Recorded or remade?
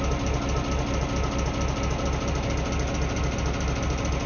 recorded